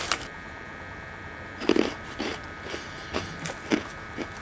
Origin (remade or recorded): remade